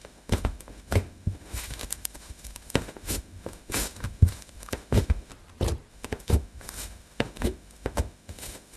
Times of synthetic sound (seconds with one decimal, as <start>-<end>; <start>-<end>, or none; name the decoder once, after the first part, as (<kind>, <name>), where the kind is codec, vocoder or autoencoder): 0.0-5.3 (autoencoder, DAC-VAE); 5.9-8.8

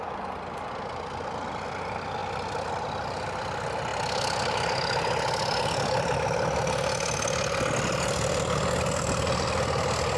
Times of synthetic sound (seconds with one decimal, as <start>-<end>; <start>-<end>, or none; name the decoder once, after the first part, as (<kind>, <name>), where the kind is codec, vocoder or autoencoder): none

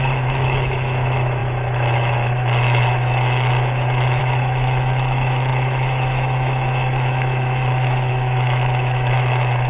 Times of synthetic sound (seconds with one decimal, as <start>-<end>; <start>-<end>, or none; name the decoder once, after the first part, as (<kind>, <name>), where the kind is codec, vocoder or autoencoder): 0.0-9.7 (autoencoder, DAC-VAE)

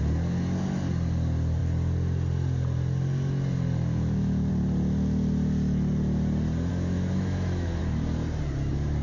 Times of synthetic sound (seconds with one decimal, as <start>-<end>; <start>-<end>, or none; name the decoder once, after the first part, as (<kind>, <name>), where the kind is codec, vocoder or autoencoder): 6.7-7.8 (autoencoder, DAC-VAE)

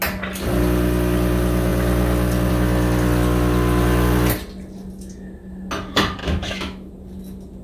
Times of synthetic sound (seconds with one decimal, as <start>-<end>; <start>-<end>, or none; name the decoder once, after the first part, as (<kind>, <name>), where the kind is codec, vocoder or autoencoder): 6.2-6.9 (autoencoder, DAC-VAE)